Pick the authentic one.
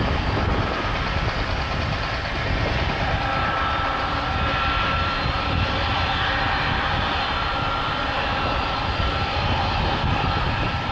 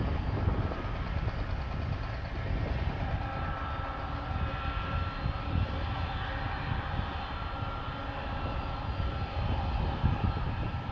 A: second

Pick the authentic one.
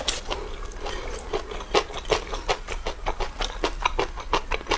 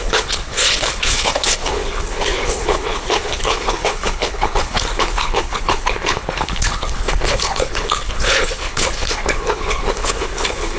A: first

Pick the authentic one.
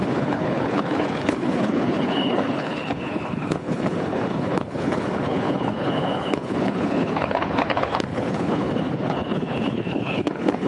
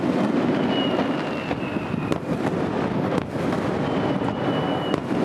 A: second